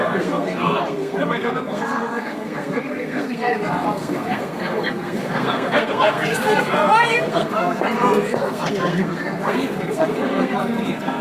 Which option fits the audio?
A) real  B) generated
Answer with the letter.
B